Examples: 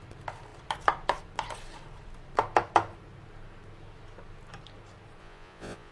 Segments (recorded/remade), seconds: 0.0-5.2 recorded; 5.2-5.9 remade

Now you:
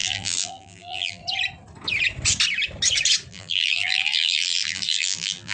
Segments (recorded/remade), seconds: 0.0-1.2 remade; 1.2-3.3 recorded; 3.3-5.5 remade

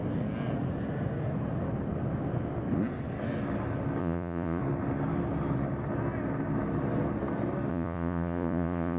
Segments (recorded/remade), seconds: 0.0-4.0 recorded; 4.0-4.6 remade; 4.6-7.7 recorded; 7.7-9.0 remade

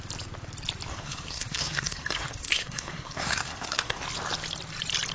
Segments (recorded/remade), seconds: 0.0-0.9 recorded; 0.9-4.0 remade; 4.0-5.1 recorded

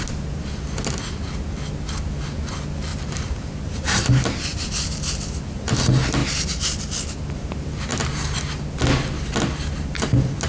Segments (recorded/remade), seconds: 0.0-2.9 recorded; 2.9-4.0 remade; 4.0-4.5 recorded; 4.5-5.6 remade; 5.6-10.5 recorded

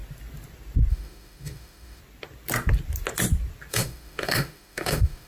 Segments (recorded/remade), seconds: 0.0-0.9 recorded; 0.9-2.0 remade; 2.0-3.7 recorded; 3.7-5.3 remade

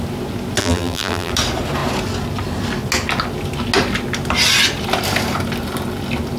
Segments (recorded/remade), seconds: 0.0-0.6 recorded; 0.6-1.3 remade; 1.3-6.4 recorded

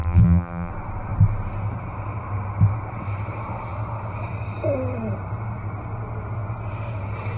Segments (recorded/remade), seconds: 0.0-0.7 remade; 0.7-7.4 recorded